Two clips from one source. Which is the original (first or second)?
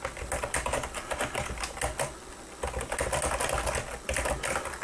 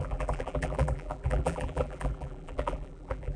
first